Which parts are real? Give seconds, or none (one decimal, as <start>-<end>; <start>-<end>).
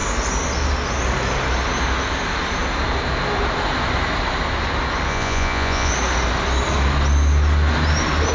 0.0-5.1; 5.9-8.3